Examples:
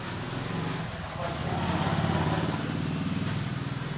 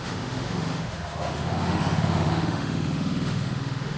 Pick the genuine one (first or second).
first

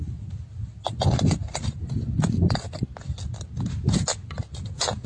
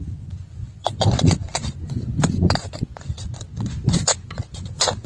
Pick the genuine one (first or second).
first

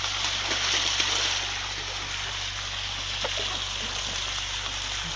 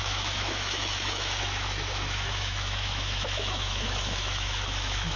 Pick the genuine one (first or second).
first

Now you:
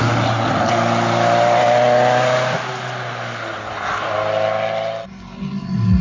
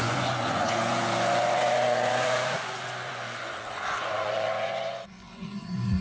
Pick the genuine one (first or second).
first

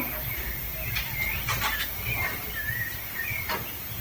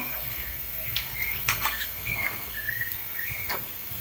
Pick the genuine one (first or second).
first